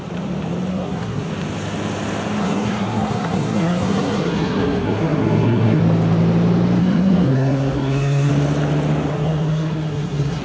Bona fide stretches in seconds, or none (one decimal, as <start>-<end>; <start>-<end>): 0.0-0.7; 1.3-2.4; 5.8-6.8; 8.3-9.1